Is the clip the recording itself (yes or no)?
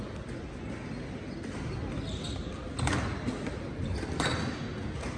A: yes